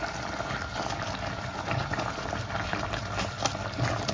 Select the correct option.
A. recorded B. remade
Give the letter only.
B